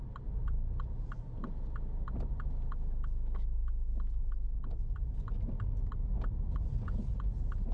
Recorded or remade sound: recorded